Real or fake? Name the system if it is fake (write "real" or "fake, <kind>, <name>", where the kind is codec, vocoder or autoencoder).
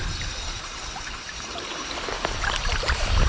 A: real